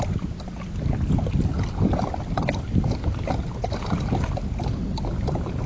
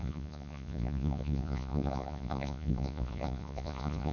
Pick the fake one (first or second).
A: second